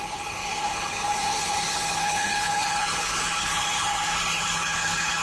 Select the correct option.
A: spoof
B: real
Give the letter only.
A